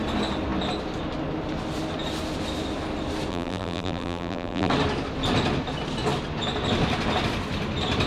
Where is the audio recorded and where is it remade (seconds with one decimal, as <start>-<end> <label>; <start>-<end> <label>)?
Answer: 0.0-3.3 recorded; 3.3-4.7 remade; 4.7-8.1 recorded